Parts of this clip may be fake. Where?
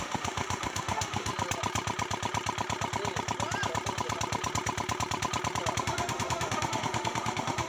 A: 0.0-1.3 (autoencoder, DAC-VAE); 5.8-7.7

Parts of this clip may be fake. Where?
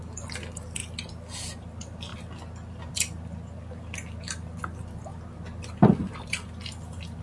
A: 0.0-0.8 (vocoder, BigVGAN v2); 1.4-7.2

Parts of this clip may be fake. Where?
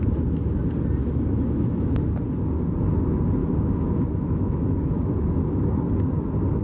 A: 1.0-2.0 (autoencoder, DAC-VAE); 3.4-5.0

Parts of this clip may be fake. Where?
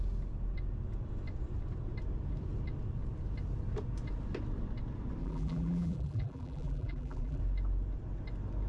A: 5.2-7.4 (vocoder, BigVGAN v2)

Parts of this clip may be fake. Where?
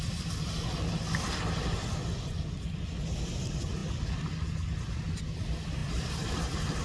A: 5.8-6.3 (vocoder, BigVGAN v2)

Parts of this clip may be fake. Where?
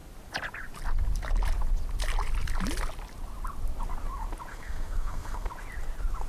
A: 4.5-5.5 (codec, SNAC)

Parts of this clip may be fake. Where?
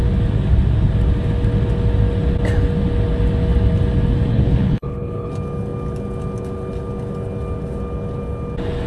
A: 4.3-5.3 (codec, HILCodec)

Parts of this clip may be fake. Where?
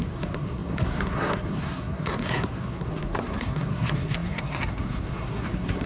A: 0.0-5.9 (codec, SNAC)